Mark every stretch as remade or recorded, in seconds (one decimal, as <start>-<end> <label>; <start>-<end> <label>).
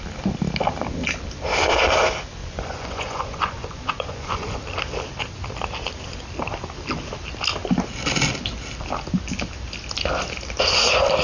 0.0-2.4 recorded; 2.4-4.6 remade; 4.6-11.2 recorded